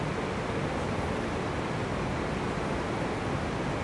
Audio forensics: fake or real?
real